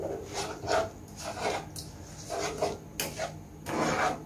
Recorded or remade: recorded